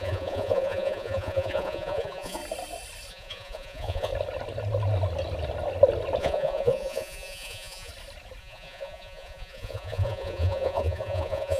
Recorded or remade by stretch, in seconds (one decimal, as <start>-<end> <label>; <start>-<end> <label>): 0.0-2.4 remade; 2.4-3.1 recorded; 3.1-4.1 remade; 4.1-6.2 recorded; 6.2-7.9 remade; 7.9-8.4 recorded; 8.4-11.6 remade

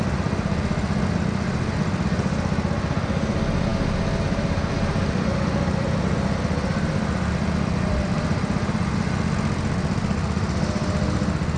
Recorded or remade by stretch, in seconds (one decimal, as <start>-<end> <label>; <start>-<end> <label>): 0.0-5.0 recorded; 5.0-8.7 remade; 8.7-11.6 recorded

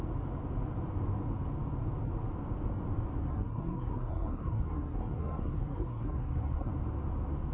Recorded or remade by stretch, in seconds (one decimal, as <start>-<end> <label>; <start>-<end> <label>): 0.0-3.2 recorded; 3.2-6.7 remade; 6.7-7.5 recorded